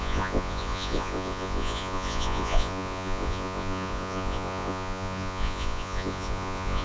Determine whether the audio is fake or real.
fake